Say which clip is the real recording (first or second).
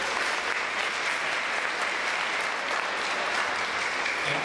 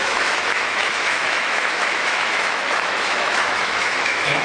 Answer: first